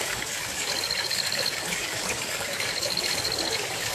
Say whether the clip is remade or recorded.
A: remade